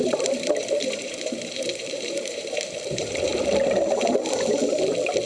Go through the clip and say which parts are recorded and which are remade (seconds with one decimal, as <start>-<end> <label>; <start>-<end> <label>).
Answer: 0.0-3.3 remade; 3.3-5.3 recorded